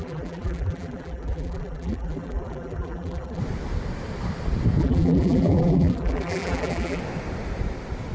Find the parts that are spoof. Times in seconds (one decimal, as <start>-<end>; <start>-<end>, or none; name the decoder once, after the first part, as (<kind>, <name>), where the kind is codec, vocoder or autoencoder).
0.0-3.4 (vocoder, BigVGAN v2); 4.8-7.0